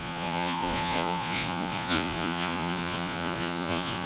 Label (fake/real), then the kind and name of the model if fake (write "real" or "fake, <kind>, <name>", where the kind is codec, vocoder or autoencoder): fake, vocoder, Vocos